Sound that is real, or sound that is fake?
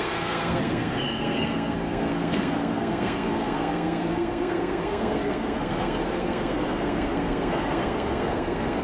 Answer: fake